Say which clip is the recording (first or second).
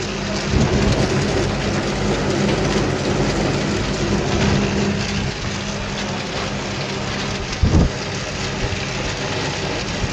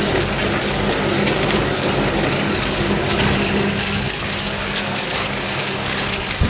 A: first